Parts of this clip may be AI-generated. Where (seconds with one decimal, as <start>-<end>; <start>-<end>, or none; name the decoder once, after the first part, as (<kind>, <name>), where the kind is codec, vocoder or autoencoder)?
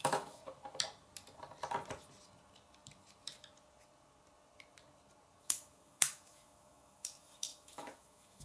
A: 0.0-0.4 (autoencoder, DAC-VAE); 5.4-8.4